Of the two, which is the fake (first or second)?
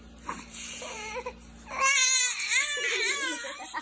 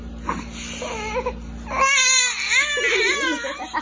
first